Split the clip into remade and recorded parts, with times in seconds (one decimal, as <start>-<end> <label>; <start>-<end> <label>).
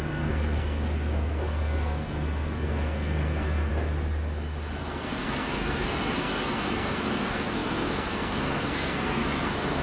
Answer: 0.0-3.7 remade; 3.7-4.8 recorded; 4.8-9.8 remade